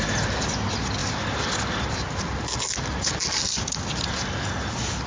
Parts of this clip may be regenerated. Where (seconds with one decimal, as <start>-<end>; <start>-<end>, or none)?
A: none